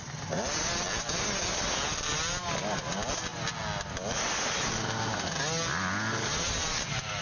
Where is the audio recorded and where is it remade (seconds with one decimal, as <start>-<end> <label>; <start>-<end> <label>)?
0.0-7.2 recorded